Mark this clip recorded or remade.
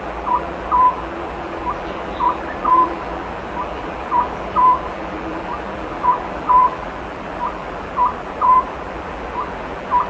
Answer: remade